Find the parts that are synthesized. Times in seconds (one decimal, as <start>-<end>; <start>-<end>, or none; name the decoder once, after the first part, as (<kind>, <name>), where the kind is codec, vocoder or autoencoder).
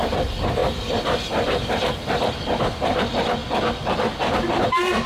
none